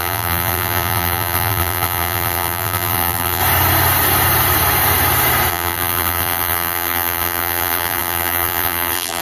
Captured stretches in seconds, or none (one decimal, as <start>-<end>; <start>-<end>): 3.4-5.5